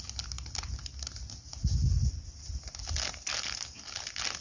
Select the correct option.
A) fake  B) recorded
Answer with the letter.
B